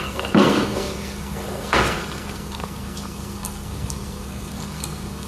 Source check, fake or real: fake